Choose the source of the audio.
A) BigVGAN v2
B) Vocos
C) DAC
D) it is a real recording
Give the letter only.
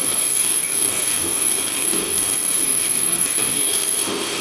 C